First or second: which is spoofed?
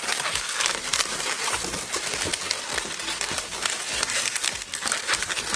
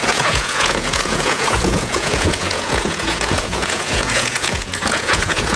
second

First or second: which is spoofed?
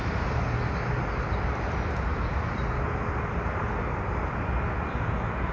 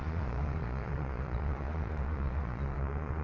second